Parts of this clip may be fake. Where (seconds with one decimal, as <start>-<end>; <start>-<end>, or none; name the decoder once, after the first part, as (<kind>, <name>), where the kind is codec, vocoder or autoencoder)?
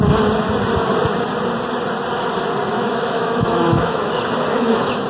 2.7-5.1 (autoencoder, DAC-VAE)